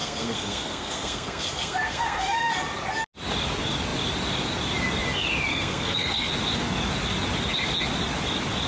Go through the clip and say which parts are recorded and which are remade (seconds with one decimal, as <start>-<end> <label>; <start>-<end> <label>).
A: 0.0-2.5 remade; 2.5-5.5 recorded; 5.5-6.3 remade; 6.3-8.7 recorded